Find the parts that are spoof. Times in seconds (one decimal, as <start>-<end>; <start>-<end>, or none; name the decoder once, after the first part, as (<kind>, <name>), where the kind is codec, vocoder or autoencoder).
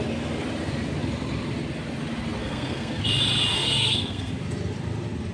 2.4-3.0 (codec, SNAC); 3.6-4.3